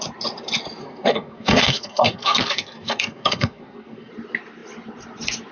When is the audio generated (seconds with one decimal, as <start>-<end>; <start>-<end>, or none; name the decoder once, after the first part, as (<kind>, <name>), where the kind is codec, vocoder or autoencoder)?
0.8-4.1 (codec, SNAC)